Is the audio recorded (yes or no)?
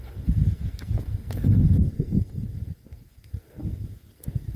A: no